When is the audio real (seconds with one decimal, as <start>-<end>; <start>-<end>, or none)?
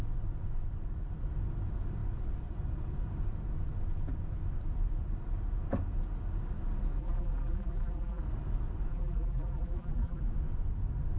0.0-7.0; 8.2-8.9; 10.2-11.2